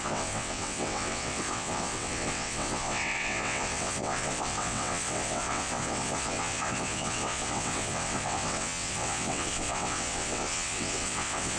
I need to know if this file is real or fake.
fake